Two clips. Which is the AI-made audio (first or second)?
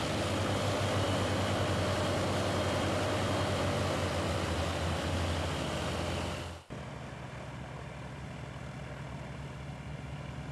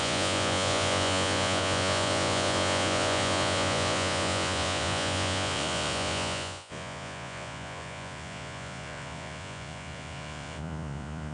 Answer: second